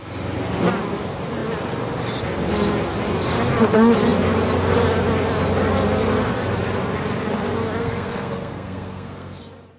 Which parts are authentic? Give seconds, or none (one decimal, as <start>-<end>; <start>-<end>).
0.0-7.8; 9.4-9.8